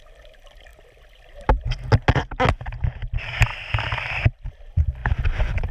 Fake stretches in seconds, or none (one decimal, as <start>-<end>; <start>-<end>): 0.7-1.9; 3.5-4.5; 5.0-5.7